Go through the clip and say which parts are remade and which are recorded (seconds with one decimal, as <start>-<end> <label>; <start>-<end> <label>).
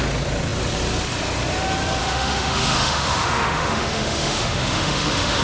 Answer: 0.0-2.0 recorded; 2.0-5.4 remade